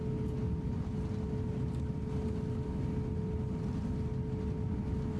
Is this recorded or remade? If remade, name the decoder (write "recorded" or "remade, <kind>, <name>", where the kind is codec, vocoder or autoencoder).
recorded